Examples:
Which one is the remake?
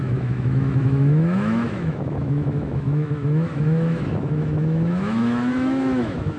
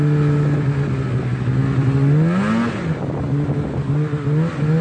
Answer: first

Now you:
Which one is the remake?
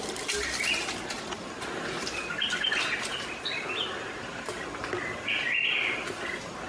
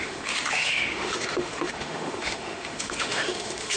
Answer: second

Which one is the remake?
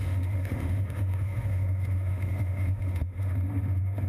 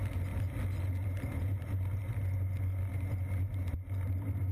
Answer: first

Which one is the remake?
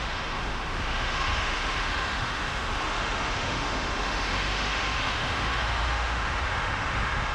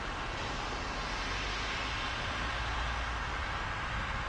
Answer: first